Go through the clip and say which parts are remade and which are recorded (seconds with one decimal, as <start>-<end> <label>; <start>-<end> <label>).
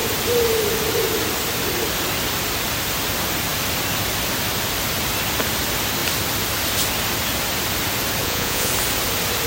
0.0-8.2 recorded; 8.2-8.7 remade; 8.7-9.5 recorded